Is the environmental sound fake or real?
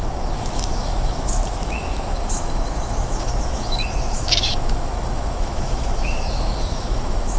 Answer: fake